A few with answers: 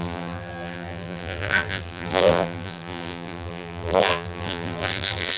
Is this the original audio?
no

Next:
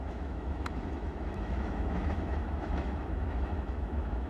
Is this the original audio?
no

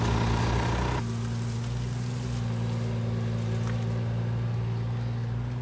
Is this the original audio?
yes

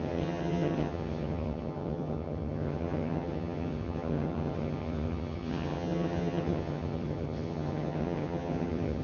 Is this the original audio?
no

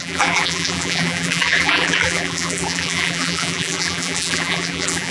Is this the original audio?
no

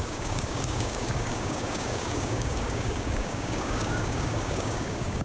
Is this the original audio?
no